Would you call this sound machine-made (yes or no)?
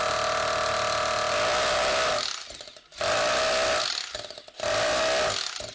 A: no